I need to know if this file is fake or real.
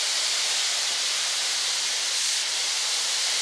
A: real